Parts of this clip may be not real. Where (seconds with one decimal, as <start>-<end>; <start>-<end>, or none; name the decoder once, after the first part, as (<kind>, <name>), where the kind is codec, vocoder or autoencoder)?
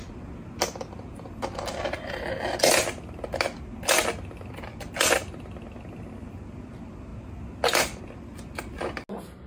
none